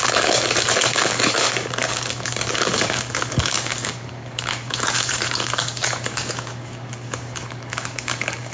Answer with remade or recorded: remade